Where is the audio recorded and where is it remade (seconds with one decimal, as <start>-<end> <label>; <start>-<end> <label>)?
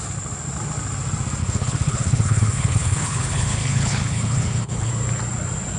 0.0-1.4 recorded; 1.4-4.9 remade; 4.9-5.8 recorded